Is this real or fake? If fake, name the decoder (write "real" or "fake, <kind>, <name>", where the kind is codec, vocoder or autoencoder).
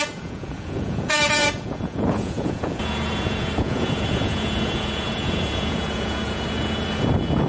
fake, vocoder, Vocos